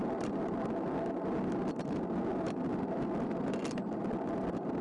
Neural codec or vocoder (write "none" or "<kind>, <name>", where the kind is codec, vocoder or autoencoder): none